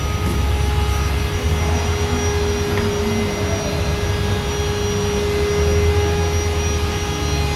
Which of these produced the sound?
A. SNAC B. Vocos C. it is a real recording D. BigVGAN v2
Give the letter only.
C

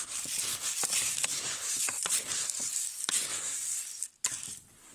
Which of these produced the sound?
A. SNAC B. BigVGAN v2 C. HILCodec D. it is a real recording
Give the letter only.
D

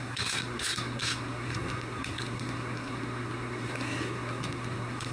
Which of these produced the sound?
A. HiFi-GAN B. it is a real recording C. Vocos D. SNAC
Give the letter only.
D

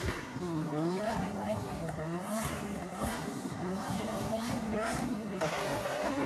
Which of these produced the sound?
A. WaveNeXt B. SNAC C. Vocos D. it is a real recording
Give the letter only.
B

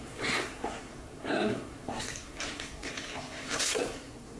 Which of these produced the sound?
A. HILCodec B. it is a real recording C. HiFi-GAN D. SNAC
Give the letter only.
D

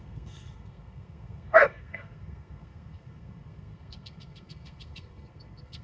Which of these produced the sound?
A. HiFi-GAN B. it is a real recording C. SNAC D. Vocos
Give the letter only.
C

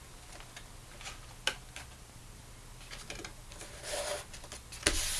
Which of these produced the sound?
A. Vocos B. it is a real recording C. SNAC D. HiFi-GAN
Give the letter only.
B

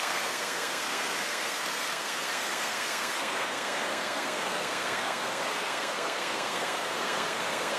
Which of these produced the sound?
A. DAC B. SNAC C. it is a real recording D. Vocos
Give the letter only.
B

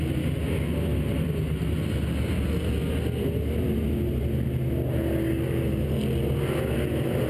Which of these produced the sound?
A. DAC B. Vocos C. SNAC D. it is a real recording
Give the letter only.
D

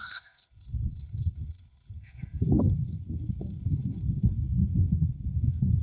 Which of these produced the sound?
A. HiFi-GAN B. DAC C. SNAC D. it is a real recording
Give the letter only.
C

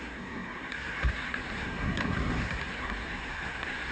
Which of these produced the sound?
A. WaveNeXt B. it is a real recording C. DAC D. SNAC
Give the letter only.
D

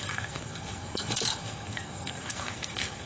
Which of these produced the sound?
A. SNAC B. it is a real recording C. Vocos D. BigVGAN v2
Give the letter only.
A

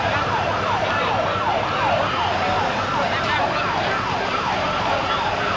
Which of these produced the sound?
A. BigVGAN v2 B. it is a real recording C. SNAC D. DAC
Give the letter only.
B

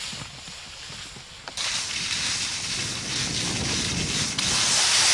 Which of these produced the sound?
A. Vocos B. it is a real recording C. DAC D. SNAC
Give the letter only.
B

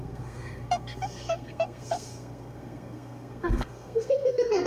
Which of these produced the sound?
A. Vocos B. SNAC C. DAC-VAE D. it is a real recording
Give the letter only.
B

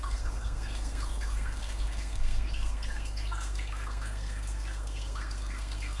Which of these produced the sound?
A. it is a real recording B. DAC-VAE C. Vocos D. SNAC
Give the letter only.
D